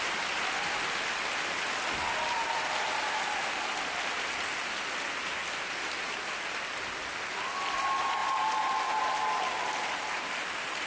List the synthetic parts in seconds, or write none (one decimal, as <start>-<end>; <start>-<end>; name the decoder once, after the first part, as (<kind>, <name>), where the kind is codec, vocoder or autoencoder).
none